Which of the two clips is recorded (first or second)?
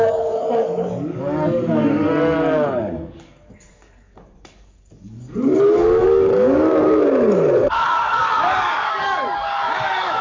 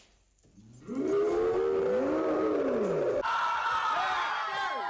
second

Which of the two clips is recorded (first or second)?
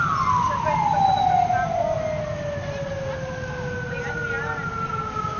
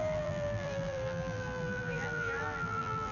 first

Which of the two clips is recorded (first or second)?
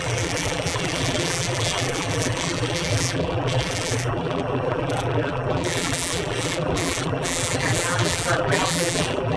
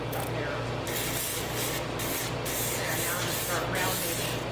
second